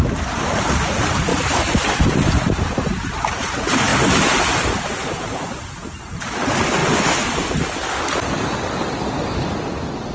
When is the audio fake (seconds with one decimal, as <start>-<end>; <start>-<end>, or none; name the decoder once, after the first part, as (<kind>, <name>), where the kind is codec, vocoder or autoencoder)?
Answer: 1.3-2.5 (vocoder, BigVGAN v2); 6.8-9.1